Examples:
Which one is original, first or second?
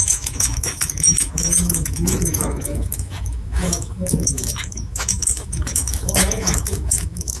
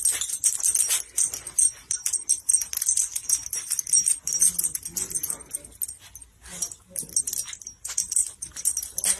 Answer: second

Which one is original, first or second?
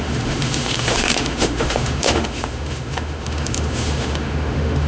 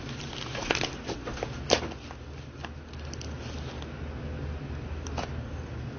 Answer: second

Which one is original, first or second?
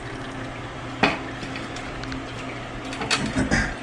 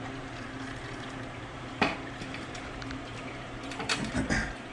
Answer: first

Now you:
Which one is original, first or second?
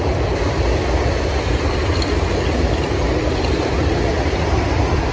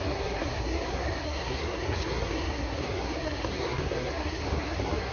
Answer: first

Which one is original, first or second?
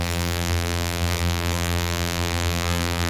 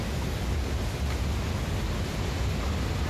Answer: second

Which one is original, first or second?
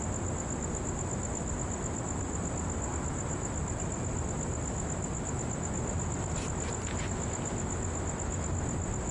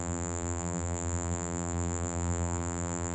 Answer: first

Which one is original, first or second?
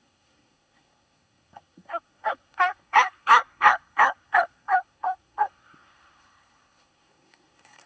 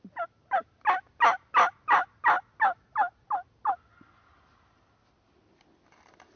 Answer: second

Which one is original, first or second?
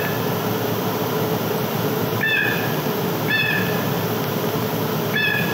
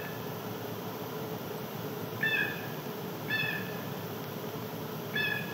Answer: first